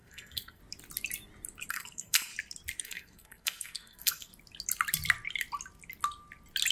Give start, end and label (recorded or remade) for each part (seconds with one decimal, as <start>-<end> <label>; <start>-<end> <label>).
0.0-0.6 remade; 0.6-1.7 recorded; 1.7-2.3 remade; 2.3-2.8 recorded; 2.8-4.3 remade; 4.3-6.7 recorded